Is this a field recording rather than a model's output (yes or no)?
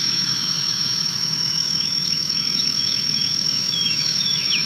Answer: no